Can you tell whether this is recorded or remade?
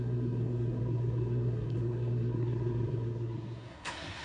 remade